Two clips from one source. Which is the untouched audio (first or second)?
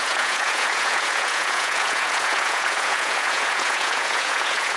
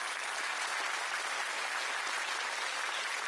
second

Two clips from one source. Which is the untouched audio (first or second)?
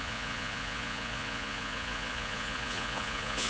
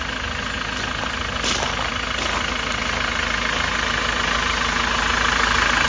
second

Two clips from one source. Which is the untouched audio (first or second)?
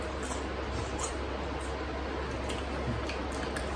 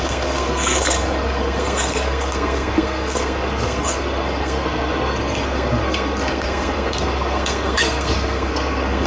first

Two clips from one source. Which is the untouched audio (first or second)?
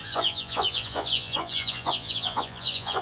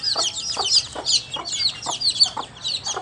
second